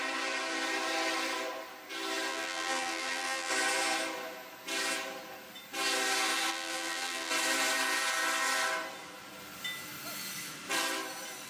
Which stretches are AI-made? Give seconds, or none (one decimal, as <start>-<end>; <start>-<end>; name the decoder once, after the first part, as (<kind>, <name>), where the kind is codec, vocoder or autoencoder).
2.3-3.5 (vocoder, BigVGAN v2); 6.5-7.3